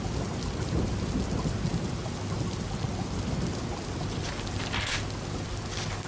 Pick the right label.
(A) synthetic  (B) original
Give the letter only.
B